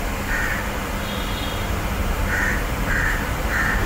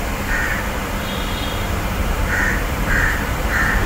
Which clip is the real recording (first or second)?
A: first